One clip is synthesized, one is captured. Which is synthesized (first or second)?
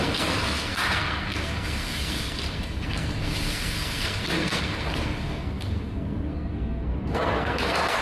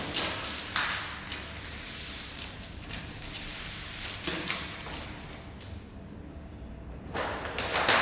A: first